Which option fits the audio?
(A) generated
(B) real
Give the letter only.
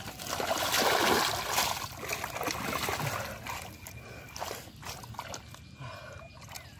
B